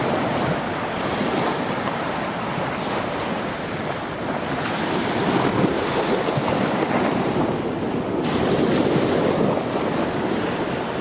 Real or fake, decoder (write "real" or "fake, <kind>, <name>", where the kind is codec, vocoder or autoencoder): fake, vocoder, BigVGAN v2